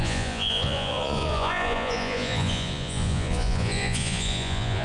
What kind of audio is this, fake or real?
fake